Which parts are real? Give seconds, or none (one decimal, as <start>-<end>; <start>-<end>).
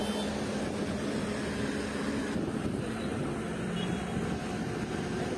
0.0-5.4